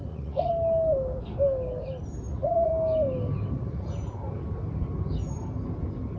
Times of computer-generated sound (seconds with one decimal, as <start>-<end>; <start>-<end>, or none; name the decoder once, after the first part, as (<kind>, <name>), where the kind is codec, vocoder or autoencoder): 0.0-0.5 (vocoder, Vocos); 2.3-2.7; 3.5-3.9